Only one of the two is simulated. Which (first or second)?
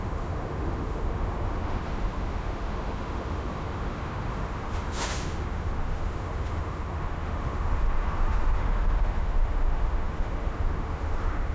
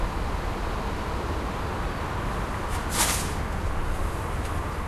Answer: first